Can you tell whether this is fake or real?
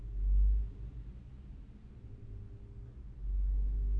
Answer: real